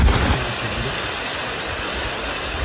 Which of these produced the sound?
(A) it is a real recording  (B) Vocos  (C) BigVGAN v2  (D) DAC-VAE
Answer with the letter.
A